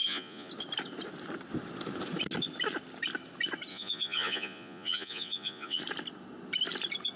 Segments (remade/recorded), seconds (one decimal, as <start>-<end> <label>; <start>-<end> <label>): 0.0-0.5 remade; 0.5-3.7 recorded; 3.7-5.8 remade; 5.8-7.2 recorded